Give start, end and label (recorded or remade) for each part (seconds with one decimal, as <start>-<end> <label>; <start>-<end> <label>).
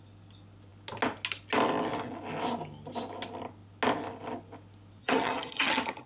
0.0-5.0 recorded; 5.0-6.1 remade